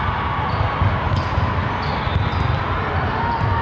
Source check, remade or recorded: recorded